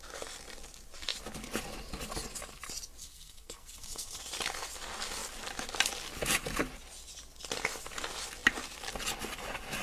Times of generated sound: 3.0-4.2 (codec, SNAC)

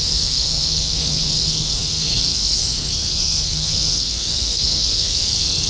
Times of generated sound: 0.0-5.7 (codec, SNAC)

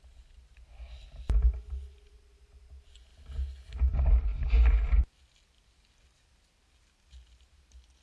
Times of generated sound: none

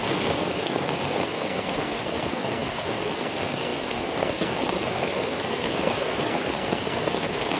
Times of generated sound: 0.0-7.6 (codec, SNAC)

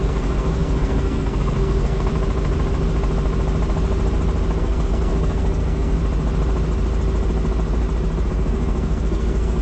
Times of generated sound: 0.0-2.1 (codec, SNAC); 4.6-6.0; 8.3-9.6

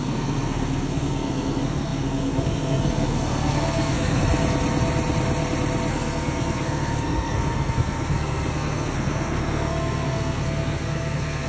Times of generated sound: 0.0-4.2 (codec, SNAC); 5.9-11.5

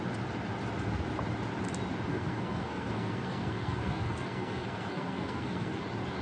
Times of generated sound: 2.1-5.8 (codec, SNAC)

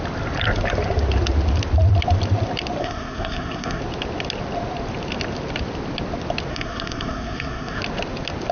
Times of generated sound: 2.8-3.8 (codec, SNAC); 6.5-7.8